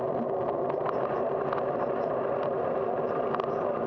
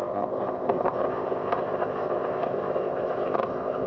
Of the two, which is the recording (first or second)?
first